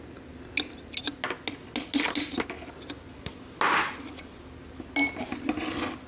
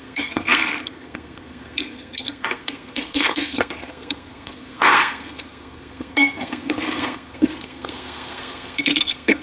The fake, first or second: second